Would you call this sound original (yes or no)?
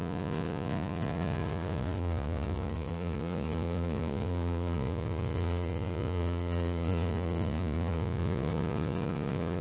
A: no